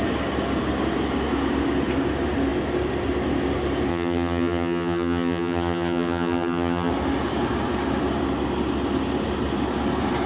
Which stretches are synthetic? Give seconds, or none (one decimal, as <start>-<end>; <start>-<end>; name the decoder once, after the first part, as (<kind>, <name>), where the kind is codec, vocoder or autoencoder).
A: 3.9-6.9 (vocoder, HiFi-GAN)